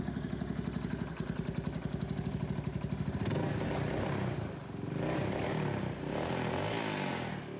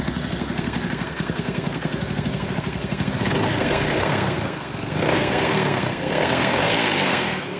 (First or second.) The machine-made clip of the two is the second